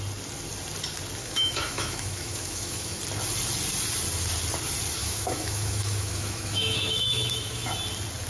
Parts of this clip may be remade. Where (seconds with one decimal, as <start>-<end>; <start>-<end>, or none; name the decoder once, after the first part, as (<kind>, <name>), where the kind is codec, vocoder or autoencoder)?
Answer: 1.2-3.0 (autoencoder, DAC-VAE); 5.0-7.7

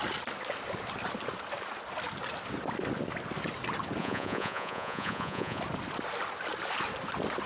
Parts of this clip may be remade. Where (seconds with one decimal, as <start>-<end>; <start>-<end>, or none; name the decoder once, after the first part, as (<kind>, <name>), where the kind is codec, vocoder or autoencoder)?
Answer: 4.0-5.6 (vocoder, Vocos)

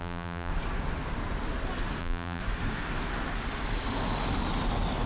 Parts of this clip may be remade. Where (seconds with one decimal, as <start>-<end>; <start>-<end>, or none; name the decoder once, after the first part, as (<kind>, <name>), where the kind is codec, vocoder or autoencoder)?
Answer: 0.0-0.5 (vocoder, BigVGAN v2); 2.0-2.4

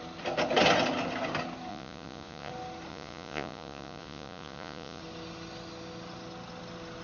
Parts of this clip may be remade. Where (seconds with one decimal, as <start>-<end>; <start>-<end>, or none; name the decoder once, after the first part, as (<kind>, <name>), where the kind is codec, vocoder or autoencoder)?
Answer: 1.7-2.5 (vocoder, Vocos); 2.9-5.0

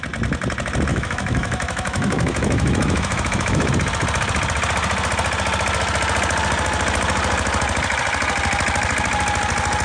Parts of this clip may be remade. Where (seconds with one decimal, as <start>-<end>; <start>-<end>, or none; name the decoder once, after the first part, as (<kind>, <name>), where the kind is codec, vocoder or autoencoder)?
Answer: 0.9-3.7 (autoencoder, DAC-VAE)

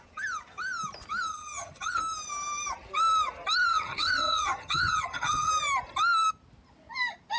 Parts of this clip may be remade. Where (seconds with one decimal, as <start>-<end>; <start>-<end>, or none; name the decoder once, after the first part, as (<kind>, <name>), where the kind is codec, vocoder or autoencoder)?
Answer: 1.3-2.0 (vocoder, HiFi-GAN); 3.7-5.5